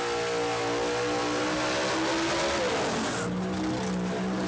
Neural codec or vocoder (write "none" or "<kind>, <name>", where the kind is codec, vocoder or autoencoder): none